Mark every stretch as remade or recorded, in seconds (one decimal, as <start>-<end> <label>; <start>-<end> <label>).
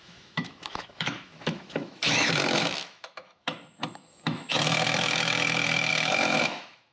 0.0-6.9 remade